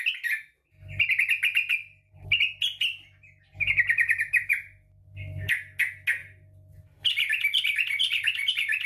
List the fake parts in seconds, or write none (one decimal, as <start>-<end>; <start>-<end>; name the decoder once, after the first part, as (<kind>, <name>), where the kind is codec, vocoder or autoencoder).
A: 6.2-8.5 (vocoder, BigVGAN v2)